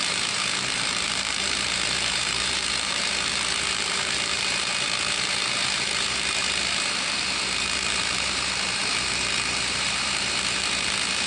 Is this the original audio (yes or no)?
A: no